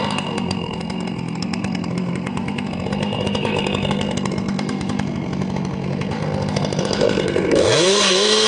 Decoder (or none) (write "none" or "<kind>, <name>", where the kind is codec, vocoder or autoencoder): codec, SNAC